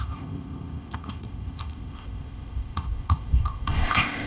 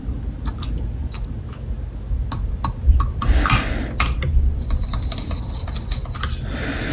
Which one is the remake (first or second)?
first